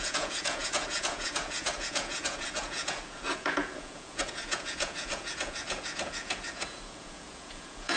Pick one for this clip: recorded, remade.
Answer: remade